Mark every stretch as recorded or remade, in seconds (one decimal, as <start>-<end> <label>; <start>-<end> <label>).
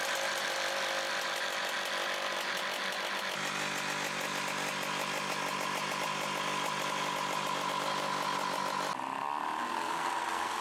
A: 0.0-9.6 recorded; 9.6-10.6 remade